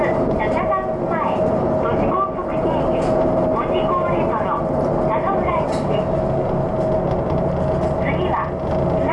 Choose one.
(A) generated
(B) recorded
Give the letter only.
B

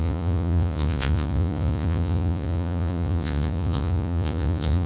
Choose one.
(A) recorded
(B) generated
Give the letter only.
B